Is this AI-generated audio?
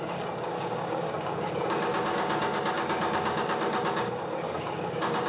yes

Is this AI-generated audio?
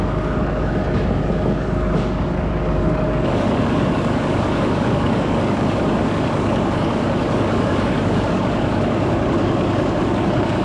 yes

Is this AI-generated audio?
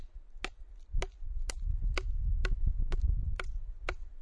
no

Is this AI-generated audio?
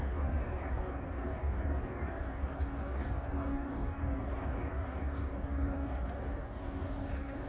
yes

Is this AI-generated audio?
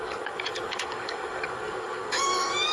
yes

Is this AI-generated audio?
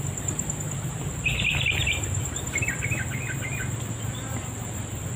no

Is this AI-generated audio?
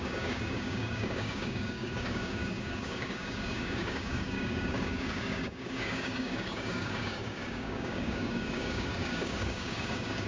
yes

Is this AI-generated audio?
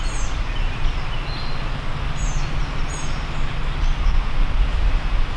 no